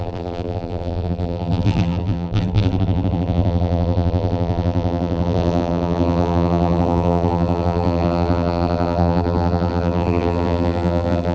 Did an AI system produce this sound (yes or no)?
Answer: yes